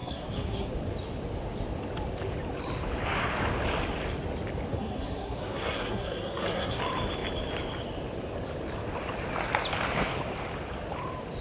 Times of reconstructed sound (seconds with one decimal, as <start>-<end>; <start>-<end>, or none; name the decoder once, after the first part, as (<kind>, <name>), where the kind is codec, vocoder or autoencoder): 0.0-0.7 (codec, SNAC); 4.7-6.8